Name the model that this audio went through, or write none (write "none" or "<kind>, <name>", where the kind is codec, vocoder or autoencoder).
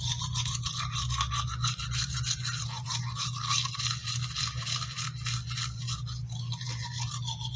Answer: none